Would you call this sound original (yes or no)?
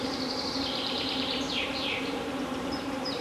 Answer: no